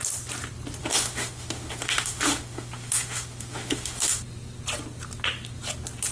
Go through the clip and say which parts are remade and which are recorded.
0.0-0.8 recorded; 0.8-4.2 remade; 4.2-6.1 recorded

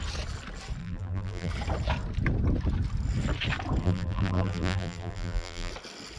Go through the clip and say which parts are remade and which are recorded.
0.0-0.8 recorded; 0.8-1.5 remade; 1.5-3.8 recorded; 3.8-5.7 remade; 5.7-6.2 recorded